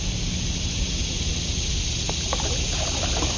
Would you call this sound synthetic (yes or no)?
no